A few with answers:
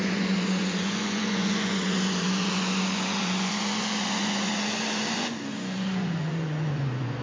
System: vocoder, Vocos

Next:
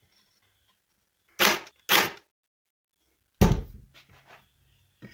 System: none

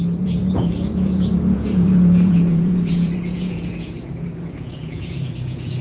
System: vocoder, Vocos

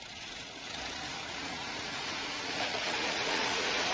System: vocoder, Vocos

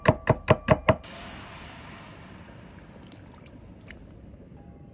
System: none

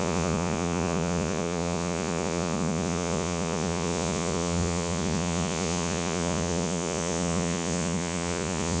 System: vocoder, Vocos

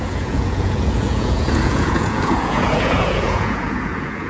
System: vocoder, Vocos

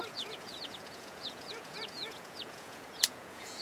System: vocoder, Vocos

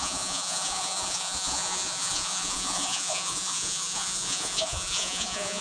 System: vocoder, Vocos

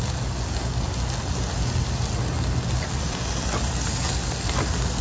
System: none